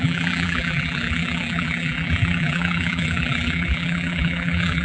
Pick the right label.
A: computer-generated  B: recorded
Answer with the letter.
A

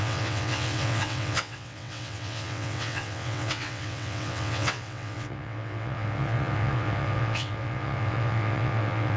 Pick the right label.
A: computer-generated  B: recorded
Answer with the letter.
A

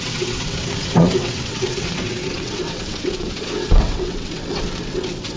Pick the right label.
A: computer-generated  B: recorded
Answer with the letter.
A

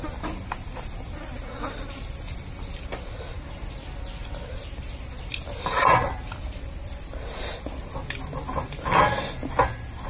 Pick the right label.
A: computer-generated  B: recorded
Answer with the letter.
B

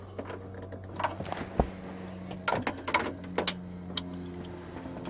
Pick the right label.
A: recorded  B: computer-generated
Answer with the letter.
A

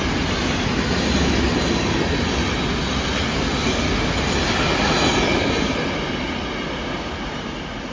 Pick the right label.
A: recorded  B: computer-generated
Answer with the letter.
A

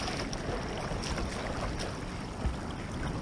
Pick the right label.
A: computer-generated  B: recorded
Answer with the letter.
B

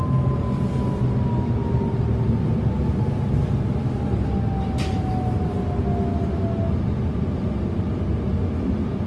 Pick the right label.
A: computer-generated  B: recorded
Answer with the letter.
B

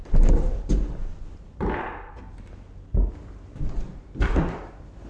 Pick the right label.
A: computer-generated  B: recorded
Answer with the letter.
B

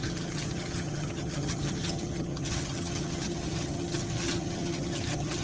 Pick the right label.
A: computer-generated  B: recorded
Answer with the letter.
A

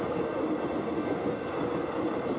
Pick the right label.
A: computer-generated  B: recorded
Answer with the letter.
B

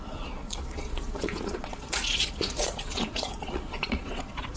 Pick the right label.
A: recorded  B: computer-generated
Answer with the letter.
B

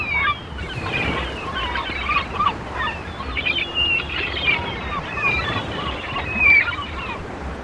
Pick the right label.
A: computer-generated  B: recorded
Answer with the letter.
A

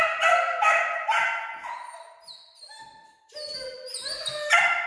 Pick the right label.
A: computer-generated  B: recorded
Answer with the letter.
B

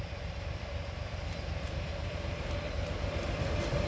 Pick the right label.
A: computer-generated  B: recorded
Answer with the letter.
B